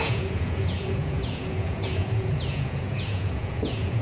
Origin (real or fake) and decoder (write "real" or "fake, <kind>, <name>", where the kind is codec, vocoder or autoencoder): fake, vocoder, Vocos